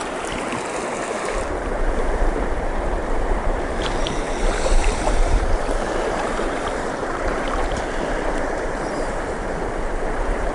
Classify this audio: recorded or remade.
remade